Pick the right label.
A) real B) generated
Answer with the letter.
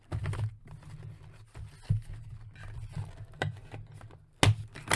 A